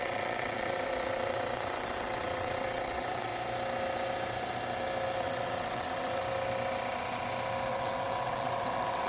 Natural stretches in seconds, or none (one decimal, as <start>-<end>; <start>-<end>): 3.3-5.2; 6.2-7.7